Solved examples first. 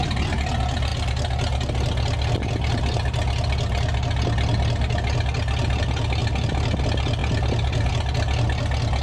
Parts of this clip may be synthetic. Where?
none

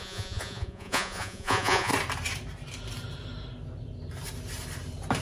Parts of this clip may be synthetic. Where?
0.0-1.9

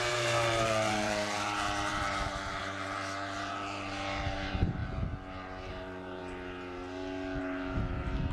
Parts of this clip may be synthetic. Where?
0.0-4.8; 5.7-6.2; 7.4-8.3

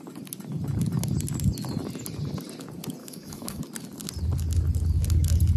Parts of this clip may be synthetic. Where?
3.0-3.6

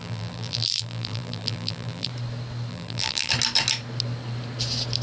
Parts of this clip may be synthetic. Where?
0.0-2.1; 2.7-3.3

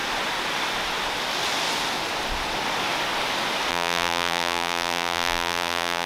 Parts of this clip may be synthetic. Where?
3.7-6.1

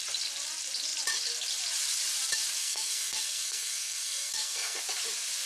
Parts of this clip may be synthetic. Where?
2.6-4.8

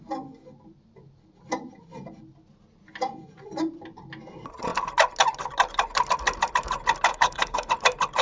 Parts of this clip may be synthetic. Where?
7.1-7.7